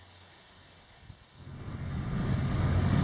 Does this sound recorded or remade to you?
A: remade